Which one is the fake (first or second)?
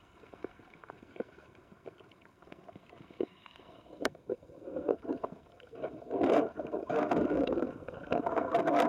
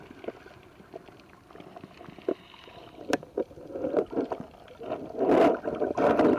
first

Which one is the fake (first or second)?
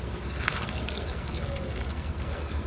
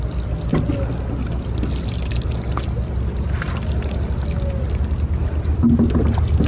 first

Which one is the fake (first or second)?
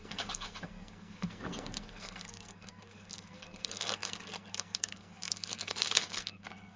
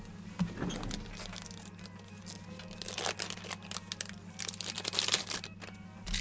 first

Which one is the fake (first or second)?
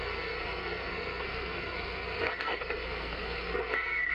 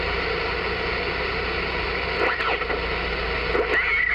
first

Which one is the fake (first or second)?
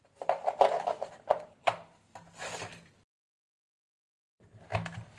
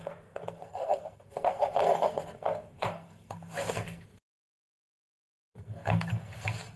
second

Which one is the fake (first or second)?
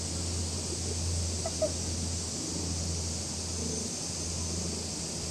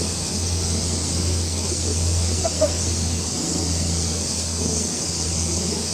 second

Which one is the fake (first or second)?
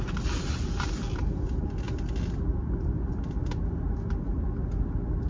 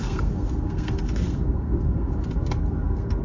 second